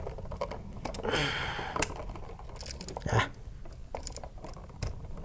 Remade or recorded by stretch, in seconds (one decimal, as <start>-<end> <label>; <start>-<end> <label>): 0.0-1.2 recorded; 1.2-2.0 remade; 2.0-3.8 recorded; 3.8-5.2 remade